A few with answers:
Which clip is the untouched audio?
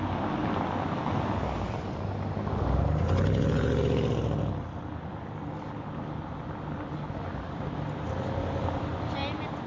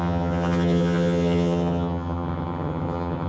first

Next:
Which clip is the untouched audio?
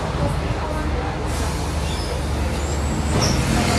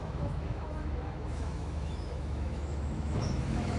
first